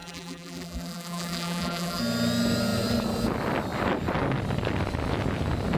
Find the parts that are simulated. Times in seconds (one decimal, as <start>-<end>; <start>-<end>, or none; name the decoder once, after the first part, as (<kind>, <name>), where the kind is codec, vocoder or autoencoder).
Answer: 0.0-2.0 (vocoder, BigVGAN v2)